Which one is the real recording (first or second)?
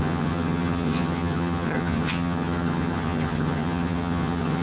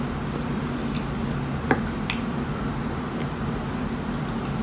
second